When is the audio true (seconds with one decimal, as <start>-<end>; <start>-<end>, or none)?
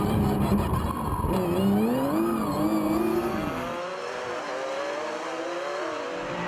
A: 0.0-6.5